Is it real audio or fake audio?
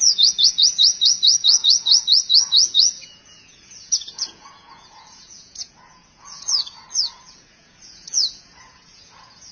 fake